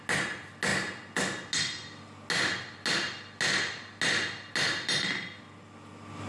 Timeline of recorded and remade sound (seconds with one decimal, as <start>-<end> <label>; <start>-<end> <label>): 0.0-6.3 recorded